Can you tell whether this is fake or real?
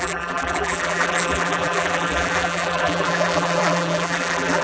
fake